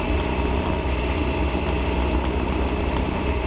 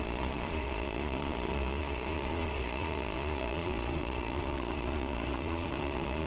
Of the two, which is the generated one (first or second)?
second